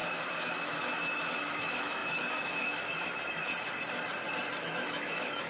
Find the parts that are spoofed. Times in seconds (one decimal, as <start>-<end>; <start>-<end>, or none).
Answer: 0.0-3.5; 4.6-5.5